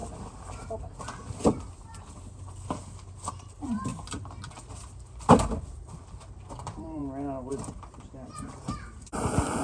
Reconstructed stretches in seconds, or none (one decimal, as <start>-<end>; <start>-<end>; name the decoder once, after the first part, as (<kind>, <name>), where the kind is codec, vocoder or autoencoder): 3.3-3.9 (vocoder, BigVGAN v2); 6.3-7.0; 7.5-9.6